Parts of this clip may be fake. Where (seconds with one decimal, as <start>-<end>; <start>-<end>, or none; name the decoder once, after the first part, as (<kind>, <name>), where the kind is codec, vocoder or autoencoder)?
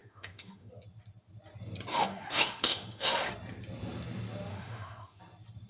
0.0-0.7 (autoencoder, DAC-VAE); 1.9-3.3; 4.5-5.2